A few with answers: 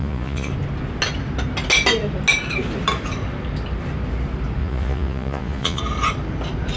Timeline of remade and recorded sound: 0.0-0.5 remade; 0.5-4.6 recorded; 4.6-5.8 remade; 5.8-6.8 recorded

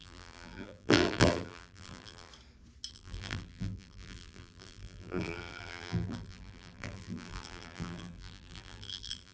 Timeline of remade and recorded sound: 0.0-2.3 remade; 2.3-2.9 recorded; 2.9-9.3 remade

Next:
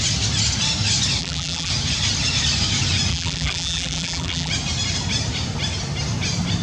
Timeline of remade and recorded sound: 0.0-1.2 recorded; 1.2-1.7 remade; 1.7-3.1 recorded; 3.1-4.5 remade; 4.5-6.6 recorded

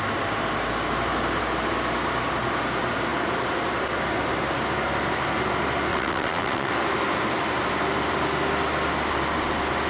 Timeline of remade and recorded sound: 0.0-5.9 recorded; 5.9-6.7 remade; 6.7-9.9 recorded